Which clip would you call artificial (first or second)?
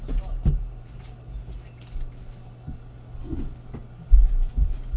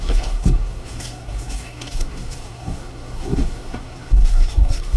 second